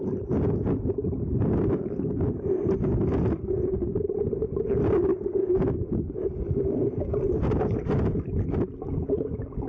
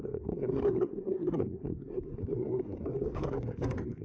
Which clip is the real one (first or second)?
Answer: first